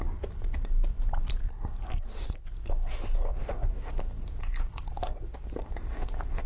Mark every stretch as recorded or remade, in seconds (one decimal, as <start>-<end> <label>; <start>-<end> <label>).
0.0-3.4 recorded; 3.4-3.9 remade; 3.9-6.5 recorded